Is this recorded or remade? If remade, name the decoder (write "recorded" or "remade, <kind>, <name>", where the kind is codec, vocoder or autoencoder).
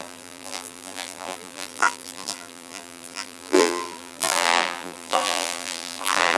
remade, vocoder, BigVGAN v2